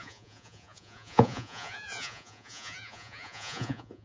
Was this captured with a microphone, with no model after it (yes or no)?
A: no